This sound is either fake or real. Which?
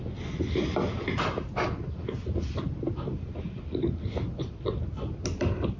real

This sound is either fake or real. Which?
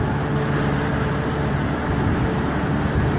real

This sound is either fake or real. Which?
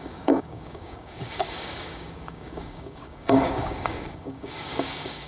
fake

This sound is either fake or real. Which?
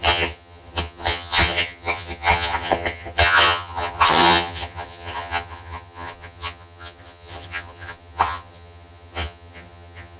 fake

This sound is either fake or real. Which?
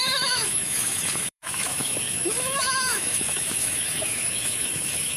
fake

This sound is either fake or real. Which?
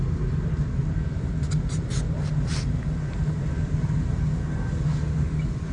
real